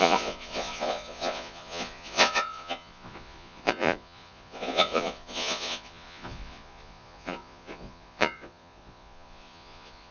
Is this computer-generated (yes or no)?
yes